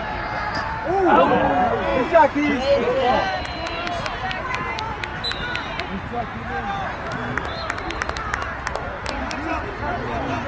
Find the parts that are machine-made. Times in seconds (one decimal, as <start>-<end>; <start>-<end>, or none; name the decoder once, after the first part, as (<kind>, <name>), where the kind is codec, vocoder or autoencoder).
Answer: none